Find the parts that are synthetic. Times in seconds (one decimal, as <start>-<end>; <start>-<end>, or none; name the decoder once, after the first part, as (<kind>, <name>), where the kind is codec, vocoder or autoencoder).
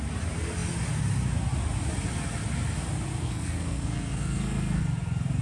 3.2-4.8 (codec, SNAC)